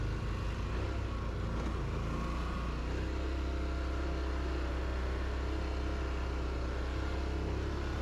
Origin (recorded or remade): recorded